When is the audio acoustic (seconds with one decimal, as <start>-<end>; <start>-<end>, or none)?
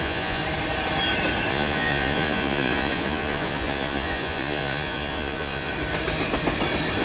0.4-1.5; 5.7-7.0